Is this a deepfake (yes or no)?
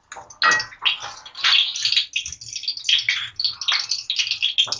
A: no